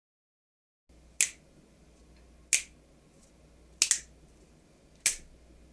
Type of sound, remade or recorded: recorded